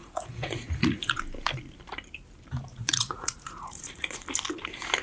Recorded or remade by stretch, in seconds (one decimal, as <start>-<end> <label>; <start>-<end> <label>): 0.0-1.1 remade; 1.1-2.7 recorded; 2.7-4.2 remade; 4.2-5.0 recorded